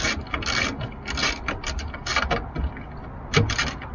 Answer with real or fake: real